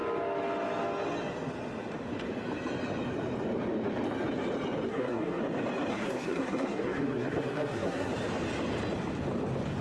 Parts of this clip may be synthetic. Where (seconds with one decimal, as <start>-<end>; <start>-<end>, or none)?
4.9-5.4; 5.9-8.1